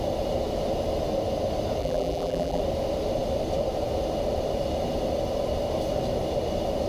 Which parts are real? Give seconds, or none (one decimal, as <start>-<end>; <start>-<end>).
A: 0.0-1.8; 2.6-6.9

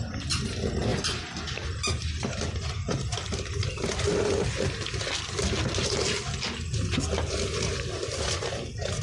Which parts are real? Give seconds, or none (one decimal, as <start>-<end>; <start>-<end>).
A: 0.0-9.0